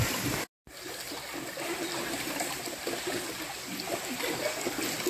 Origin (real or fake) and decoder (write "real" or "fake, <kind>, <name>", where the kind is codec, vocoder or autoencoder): real